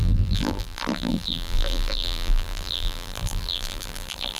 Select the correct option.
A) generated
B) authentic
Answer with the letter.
A